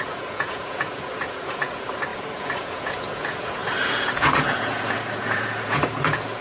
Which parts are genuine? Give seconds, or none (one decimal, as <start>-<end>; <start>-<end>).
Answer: none